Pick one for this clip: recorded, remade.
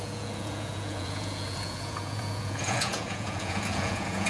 remade